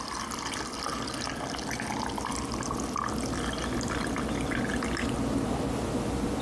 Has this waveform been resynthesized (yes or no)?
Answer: no